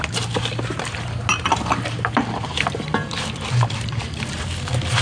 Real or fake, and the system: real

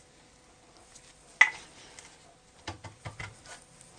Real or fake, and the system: real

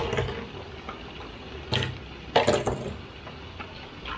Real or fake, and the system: real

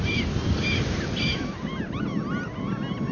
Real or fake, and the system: real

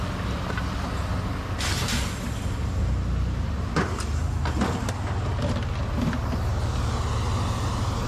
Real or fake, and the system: real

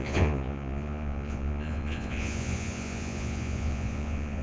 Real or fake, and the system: fake, vocoder, Vocos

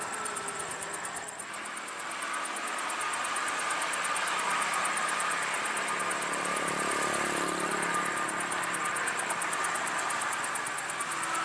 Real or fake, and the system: real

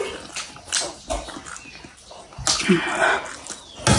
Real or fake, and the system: real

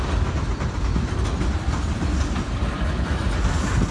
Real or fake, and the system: real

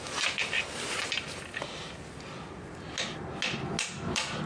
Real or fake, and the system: real